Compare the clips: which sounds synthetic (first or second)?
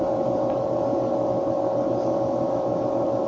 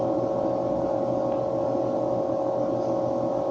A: first